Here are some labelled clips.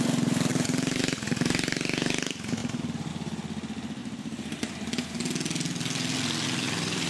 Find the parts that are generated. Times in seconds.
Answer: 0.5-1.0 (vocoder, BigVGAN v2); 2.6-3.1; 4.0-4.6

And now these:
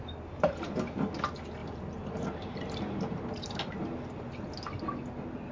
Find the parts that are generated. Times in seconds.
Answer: 1.6-3.6 (vocoder, BigVGAN v2)